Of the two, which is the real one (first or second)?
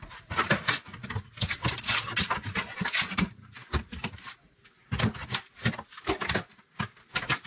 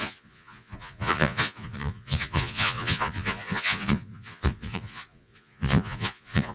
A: first